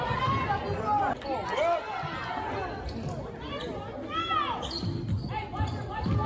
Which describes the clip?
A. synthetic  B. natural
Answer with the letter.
B